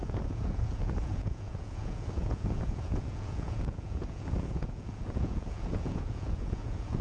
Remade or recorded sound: remade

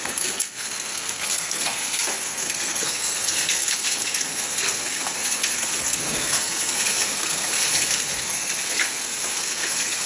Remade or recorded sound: remade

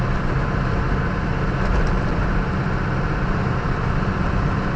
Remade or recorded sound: recorded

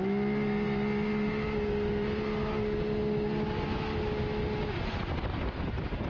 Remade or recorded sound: recorded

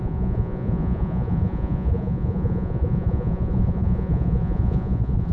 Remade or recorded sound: remade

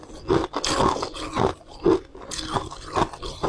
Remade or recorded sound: recorded